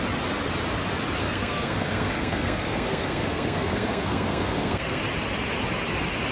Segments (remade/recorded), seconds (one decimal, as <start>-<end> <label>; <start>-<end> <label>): 0.0-1.2 recorded; 1.2-5.0 remade; 5.0-6.3 recorded